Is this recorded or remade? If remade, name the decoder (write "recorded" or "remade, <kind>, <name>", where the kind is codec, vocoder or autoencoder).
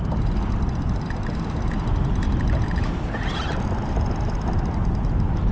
recorded